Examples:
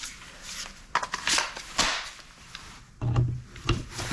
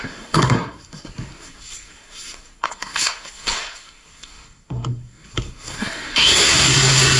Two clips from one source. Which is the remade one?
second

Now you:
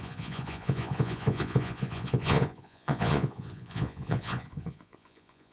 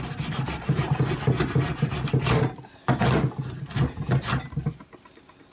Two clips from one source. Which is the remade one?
first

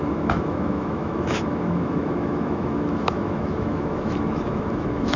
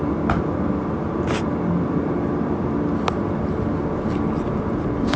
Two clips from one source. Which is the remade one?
first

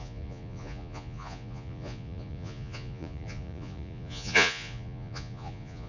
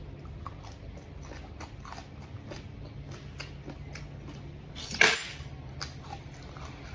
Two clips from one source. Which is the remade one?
first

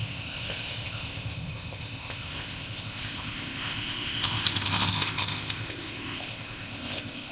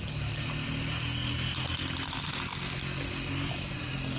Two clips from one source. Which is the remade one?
first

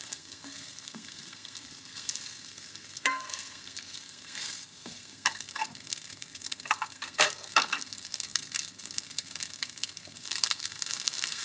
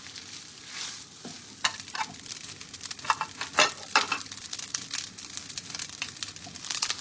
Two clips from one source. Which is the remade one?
first